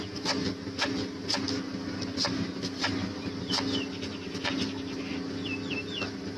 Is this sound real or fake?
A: real